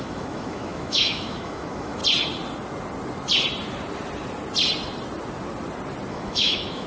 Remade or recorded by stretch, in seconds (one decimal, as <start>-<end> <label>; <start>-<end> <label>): 0.0-2.0 remade; 2.0-6.1 recorded; 6.1-6.9 remade